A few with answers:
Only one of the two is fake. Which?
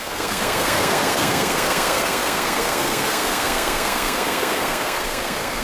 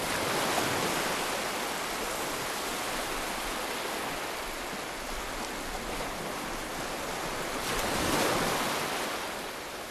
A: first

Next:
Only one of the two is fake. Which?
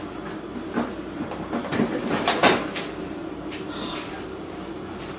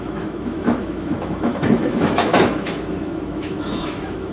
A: second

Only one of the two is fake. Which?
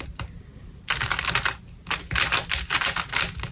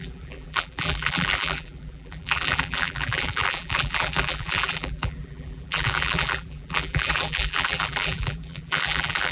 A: second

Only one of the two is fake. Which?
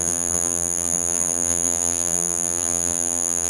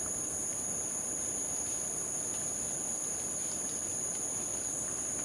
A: first